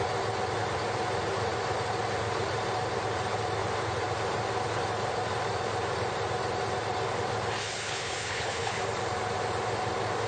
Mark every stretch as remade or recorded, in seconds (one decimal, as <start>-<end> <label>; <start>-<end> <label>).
0.0-7.6 recorded; 7.6-8.8 remade; 8.8-10.3 recorded